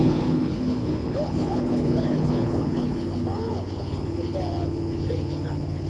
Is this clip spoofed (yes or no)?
yes